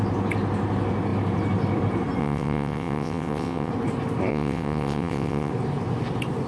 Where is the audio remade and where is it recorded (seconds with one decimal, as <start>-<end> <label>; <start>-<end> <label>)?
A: 0.0-2.2 recorded; 2.2-3.7 remade; 3.7-4.3 recorded; 4.3-5.5 remade; 5.5-6.5 recorded